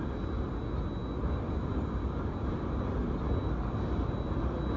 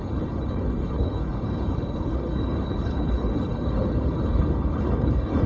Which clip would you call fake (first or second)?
second